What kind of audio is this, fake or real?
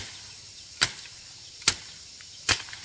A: real